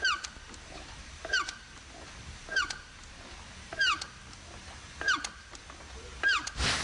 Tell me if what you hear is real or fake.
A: real